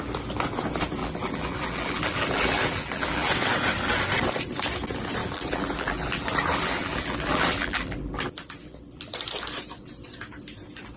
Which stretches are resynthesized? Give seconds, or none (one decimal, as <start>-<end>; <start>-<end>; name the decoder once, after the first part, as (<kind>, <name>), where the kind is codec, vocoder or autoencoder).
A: 1.0-3.3 (vocoder, BigVGAN v2); 5.2-9.1

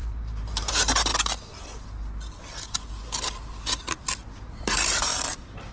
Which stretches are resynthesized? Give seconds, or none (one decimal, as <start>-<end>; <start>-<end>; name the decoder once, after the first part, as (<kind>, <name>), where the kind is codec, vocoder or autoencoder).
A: 0.0-1.1 (vocoder, BigVGAN v2); 4.5-5.1